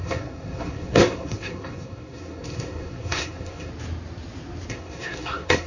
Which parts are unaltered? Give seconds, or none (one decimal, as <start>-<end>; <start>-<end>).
3.7-4.7